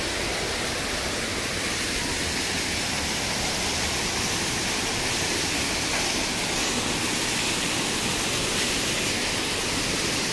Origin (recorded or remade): recorded